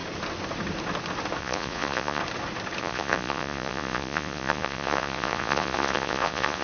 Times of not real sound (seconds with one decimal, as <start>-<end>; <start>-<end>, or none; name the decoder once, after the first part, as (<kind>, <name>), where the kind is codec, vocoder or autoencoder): 1.4-2.2 (vocoder, Vocos); 2.8-6.6